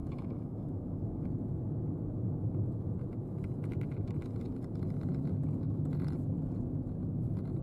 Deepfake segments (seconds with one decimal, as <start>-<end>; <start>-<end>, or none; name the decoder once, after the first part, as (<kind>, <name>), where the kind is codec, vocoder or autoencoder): 0.0-1.3 (autoencoder, DAC-VAE)